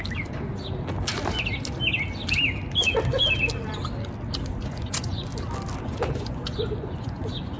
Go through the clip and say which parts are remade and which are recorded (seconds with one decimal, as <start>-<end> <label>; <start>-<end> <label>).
0.0-4.6 recorded; 4.6-5.3 remade; 5.3-5.8 recorded; 5.8-7.6 remade